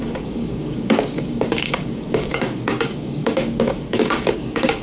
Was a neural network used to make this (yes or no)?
yes